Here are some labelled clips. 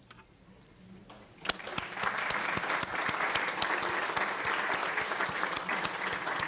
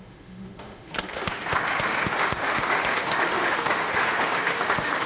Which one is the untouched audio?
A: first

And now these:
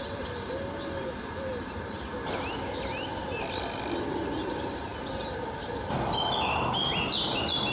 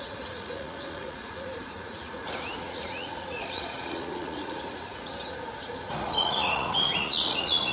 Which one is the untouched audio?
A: first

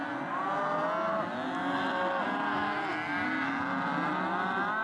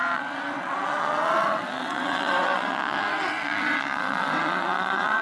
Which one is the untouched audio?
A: first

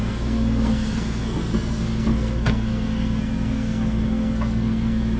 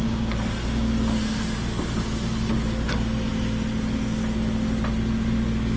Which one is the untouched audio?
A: second